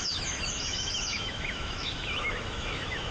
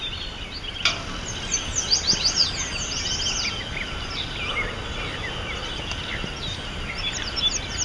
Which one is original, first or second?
second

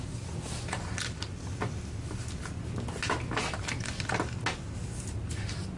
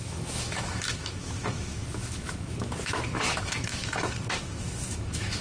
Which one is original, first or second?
first